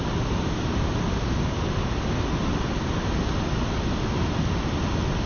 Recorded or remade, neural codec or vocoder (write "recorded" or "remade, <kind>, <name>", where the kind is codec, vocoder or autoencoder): recorded